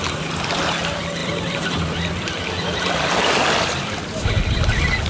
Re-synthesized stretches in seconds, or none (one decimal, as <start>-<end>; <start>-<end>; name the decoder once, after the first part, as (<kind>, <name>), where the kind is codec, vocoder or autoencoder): 1.2-4.3 (vocoder, BigVGAN v2)